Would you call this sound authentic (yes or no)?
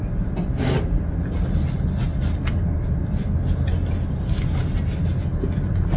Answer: yes